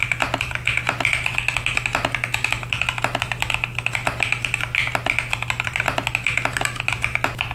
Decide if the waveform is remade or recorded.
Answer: recorded